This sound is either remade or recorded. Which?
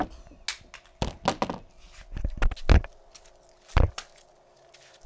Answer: recorded